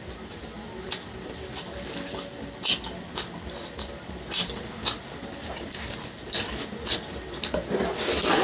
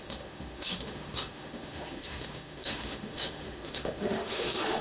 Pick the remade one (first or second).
second